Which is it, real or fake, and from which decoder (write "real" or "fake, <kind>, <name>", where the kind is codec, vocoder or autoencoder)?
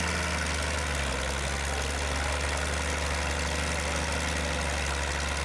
real